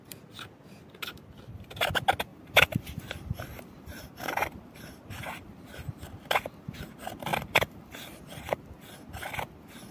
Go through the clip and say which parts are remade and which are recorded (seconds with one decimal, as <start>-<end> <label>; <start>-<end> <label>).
0.0-2.3 recorded; 2.3-6.8 remade; 6.8-7.3 recorded; 7.3-8.3 remade; 8.3-9.9 recorded